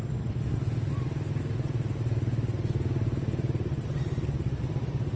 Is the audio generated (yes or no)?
no